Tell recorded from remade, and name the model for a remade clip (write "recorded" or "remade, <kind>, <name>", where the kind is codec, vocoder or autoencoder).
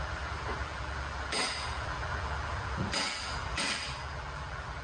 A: remade, vocoder, BigVGAN v2